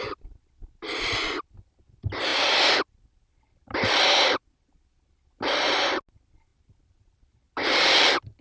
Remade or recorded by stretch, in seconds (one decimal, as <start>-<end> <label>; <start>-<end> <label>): 0.0-8.4 recorded